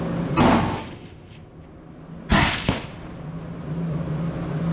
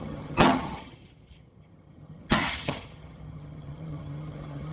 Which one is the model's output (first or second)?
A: second